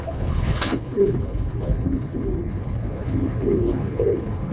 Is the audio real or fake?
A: fake